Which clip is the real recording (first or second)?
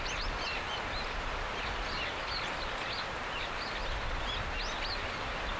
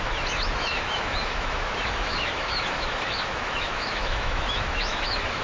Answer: first